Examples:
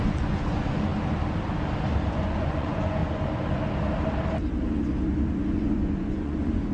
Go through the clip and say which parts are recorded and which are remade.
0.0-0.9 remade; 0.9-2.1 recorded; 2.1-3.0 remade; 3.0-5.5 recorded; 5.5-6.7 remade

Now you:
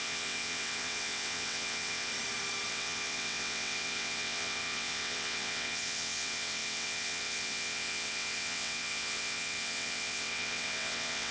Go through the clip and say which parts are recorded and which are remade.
0.0-2.1 remade; 2.1-2.7 recorded; 2.7-11.3 remade

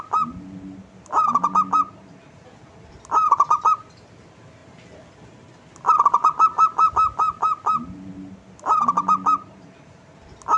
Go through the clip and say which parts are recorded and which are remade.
0.0-10.6 recorded

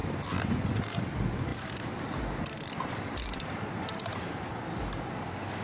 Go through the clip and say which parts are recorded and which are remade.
0.0-0.6 remade; 0.6-1.5 recorded; 1.5-4.2 remade; 4.2-5.6 recorded

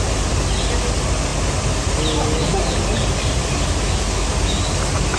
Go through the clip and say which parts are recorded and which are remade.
0.0-5.2 recorded

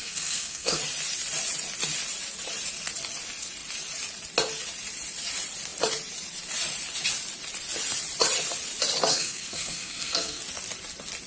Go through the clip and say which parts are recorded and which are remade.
0.0-0.8 remade; 0.8-9.1 recorded; 9.1-10.4 remade; 10.4-11.3 recorded

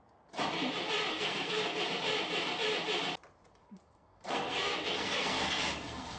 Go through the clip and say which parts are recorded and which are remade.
0.0-1.1 recorded; 1.1-1.8 remade; 1.8-3.6 recorded; 3.6-6.2 remade